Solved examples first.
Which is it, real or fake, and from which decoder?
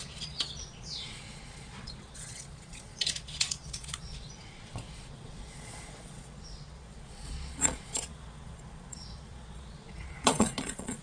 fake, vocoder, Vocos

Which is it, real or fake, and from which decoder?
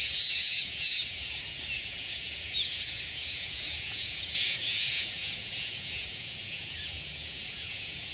fake, vocoder, Vocos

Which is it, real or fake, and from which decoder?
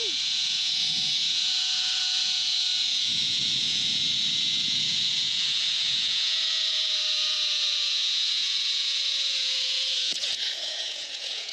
fake, vocoder, Vocos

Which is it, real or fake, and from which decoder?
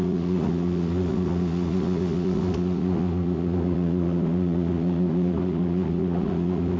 fake, vocoder, Vocos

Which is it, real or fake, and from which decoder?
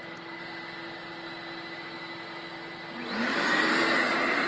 real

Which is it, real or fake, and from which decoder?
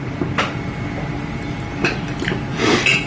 real